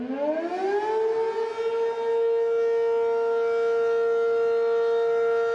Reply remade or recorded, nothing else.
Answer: recorded